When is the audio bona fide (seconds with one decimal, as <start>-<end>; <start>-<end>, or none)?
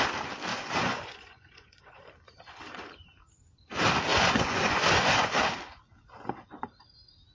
0.0-0.5; 2.1-4.1; 5.3-7.3